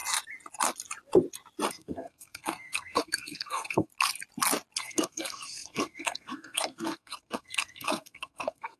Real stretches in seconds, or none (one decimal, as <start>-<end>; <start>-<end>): 0.0-1.7; 3.9-4.8